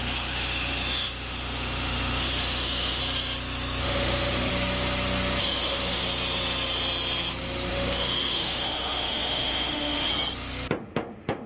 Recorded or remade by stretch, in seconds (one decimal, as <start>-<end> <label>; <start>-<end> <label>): 0.0-3.0 remade; 3.0-3.8 recorded; 3.8-4.5 remade; 4.5-5.4 recorded; 5.4-6.0 remade; 6.0-7.7 recorded; 7.7-10.1 remade; 10.1-10.8 recorded; 10.8-11.5 remade